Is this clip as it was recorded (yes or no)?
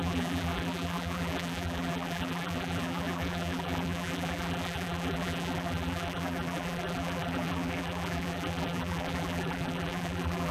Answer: no